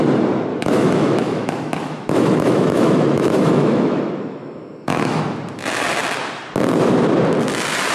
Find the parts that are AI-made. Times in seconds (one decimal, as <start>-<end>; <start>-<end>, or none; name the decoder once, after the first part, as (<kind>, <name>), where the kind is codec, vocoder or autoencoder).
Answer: 0.5-5.2 (autoencoder, DAC-VAE)